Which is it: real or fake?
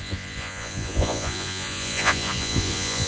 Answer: fake